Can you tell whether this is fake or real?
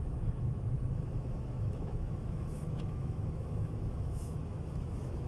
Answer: fake